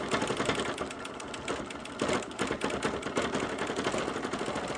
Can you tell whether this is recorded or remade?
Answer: recorded